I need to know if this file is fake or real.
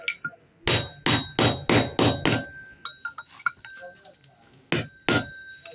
real